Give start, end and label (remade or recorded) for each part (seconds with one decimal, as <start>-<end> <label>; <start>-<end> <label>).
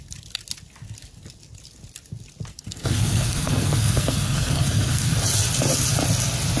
0.0-2.5 recorded; 2.5-5.1 remade; 5.1-6.6 recorded